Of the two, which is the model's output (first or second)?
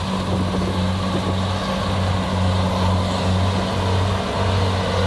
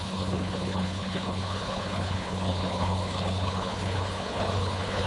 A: second